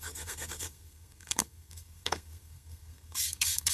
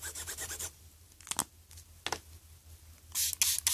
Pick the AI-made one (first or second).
first